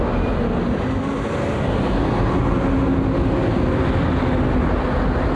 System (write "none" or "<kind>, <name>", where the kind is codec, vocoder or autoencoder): none